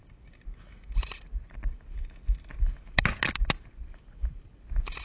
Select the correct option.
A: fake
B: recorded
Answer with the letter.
B